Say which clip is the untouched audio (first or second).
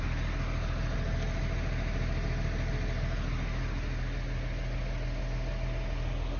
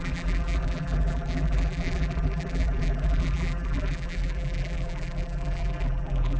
first